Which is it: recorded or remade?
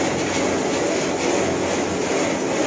recorded